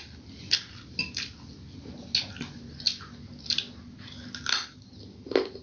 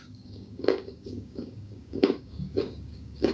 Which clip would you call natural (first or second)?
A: first